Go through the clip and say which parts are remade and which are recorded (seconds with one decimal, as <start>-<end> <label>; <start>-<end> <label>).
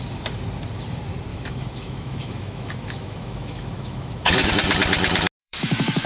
0.0-1.3 recorded; 1.3-4.5 remade; 4.5-5.4 recorded; 5.4-6.1 remade